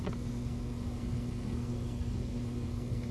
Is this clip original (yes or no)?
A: no